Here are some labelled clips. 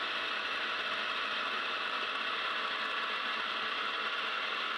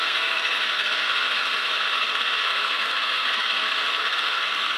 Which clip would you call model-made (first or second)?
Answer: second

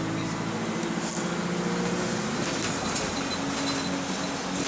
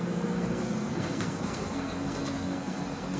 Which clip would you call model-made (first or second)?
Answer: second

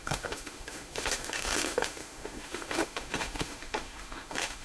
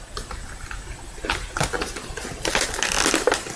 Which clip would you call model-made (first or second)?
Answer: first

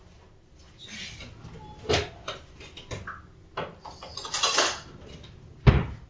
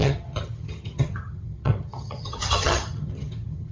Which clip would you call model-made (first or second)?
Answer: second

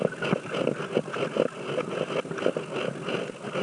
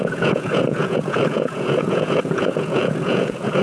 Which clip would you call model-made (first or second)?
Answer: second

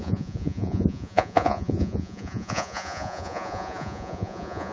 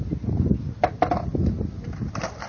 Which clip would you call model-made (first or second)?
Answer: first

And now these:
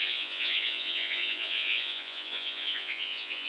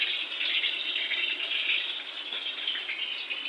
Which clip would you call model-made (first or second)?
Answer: first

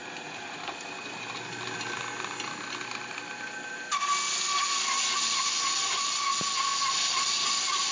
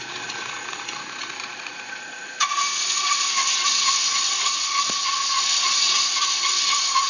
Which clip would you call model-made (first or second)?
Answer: second